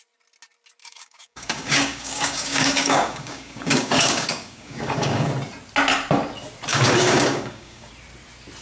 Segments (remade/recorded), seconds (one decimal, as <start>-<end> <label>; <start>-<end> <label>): 0.0-0.8 recorded; 0.8-5.3 remade; 5.3-6.7 recorded; 6.7-7.9 remade; 7.9-8.6 recorded